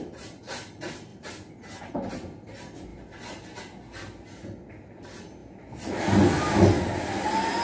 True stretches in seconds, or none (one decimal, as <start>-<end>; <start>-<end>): 0.0-7.6

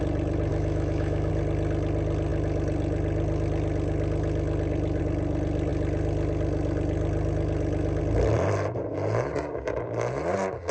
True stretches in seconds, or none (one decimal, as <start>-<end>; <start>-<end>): 0.0-0.5; 1.3-10.7

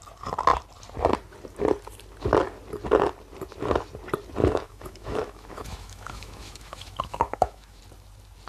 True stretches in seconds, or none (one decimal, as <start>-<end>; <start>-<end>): 0.0-4.4; 7.8-8.5

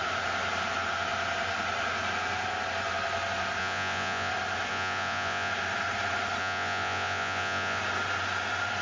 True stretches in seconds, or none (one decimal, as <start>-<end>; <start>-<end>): 0.0-3.6; 4.3-4.7; 5.5-6.4; 7.8-8.8